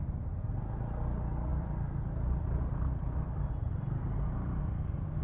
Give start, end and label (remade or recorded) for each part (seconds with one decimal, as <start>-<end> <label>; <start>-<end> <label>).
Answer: 0.0-1.5 recorded; 1.5-4.6 remade; 4.6-5.2 recorded